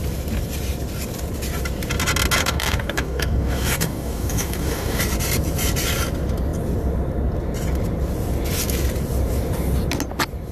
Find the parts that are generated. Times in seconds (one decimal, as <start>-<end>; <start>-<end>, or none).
2.4-5.0